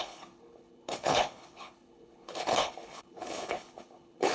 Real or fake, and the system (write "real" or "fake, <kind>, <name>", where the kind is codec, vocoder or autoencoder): fake, codec, HILCodec